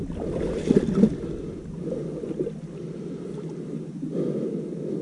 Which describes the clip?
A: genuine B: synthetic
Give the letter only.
A